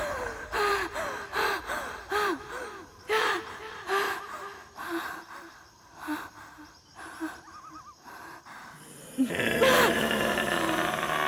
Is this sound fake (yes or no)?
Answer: yes